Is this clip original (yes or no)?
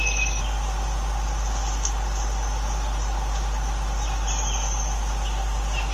yes